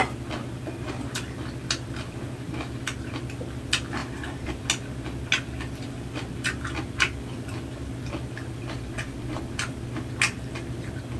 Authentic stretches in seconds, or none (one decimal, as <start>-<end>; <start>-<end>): 0.0-4.0; 4.6-11.2